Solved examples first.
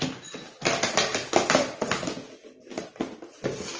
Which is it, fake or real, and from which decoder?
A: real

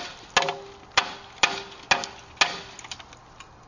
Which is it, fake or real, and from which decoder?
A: real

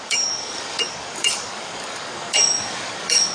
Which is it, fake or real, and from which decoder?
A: fake, codec, DAC